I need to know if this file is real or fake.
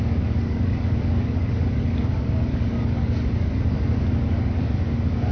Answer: fake